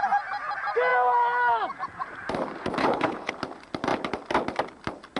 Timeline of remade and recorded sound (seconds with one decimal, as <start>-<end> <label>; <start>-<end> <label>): 0.0-2.8 recorded; 2.8-3.3 remade; 3.3-5.2 recorded